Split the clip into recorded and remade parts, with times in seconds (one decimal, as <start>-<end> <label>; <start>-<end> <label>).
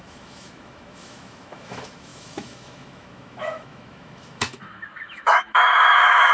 0.0-6.3 remade